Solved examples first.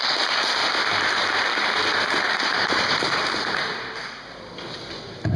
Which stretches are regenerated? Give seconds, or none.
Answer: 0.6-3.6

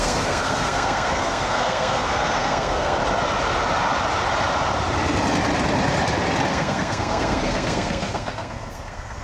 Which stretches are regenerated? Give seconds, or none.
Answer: 0.0-3.0; 6.5-9.2

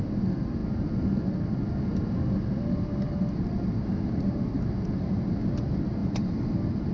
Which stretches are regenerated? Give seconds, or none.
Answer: none

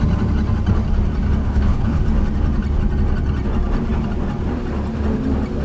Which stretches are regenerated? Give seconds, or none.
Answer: 1.4-2.0

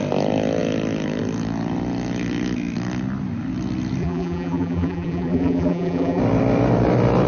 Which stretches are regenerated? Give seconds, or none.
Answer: 4.0-6.2

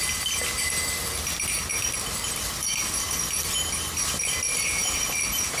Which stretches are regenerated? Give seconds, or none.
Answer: none